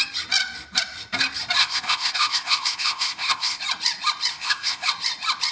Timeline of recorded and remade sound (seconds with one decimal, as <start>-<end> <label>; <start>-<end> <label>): 0.0-1.6 recorded; 1.6-3.6 remade; 3.6-4.3 recorded; 4.3-4.9 remade; 4.9-5.5 recorded

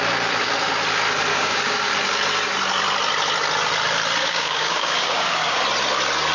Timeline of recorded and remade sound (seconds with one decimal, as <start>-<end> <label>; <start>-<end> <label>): 0.0-1.3 recorded; 1.3-1.9 remade; 1.9-4.2 recorded; 4.2-5.6 remade; 5.6-6.3 recorded

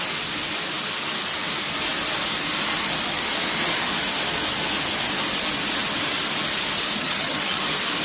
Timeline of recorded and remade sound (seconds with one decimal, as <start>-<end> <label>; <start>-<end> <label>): 0.0-7.0 recorded; 7.0-7.6 remade; 7.6-8.0 recorded

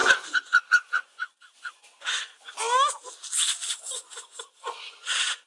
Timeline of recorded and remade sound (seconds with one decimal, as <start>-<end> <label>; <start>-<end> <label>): 0.0-2.5 remade; 2.5-3.7 recorded; 3.7-5.5 remade

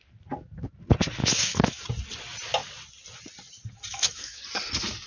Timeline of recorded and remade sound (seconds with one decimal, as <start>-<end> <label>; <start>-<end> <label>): 0.0-1.2 recorded; 1.2-1.8 remade; 1.8-3.9 recorded; 3.9-4.4 remade; 4.4-5.1 recorded